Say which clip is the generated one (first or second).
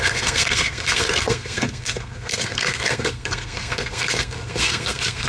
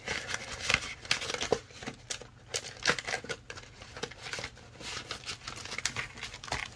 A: first